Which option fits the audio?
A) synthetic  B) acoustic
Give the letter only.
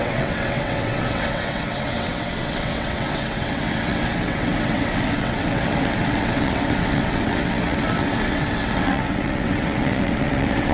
A